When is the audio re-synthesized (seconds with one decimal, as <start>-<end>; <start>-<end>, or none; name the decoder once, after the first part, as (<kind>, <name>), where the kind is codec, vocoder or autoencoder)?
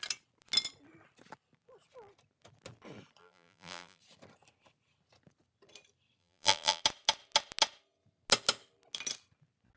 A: 3.2-4.0 (vocoder, BigVGAN v2); 6.2-6.8